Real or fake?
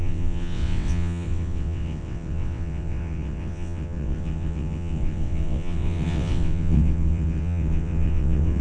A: fake